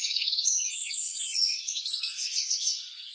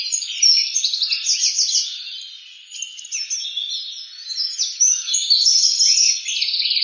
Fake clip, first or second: first